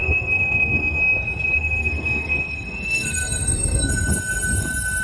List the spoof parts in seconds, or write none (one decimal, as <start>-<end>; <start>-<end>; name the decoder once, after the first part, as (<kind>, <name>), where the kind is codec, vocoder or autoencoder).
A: 0.0-1.0 (codec, SNAC); 1.6-3.9